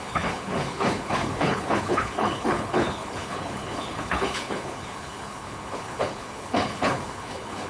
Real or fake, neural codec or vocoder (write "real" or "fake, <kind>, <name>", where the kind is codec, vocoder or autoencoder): fake, codec, HILCodec